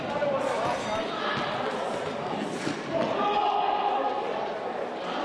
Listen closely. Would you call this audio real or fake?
real